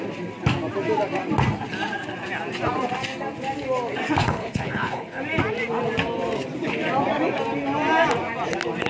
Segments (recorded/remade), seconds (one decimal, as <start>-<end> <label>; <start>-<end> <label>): 0.0-4.2 recorded; 4.2-5.2 remade; 5.2-8.9 recorded